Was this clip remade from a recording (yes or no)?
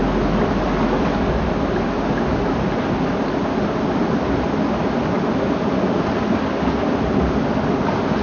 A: no